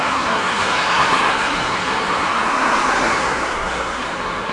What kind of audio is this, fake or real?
fake